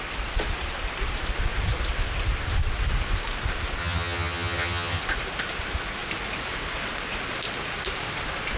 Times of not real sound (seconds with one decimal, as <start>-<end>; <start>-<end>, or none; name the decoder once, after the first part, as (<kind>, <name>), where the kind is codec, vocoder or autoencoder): 3.8-5.0 (vocoder, HiFi-GAN)